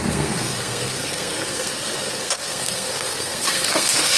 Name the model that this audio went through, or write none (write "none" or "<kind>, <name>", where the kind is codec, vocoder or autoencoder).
codec, SNAC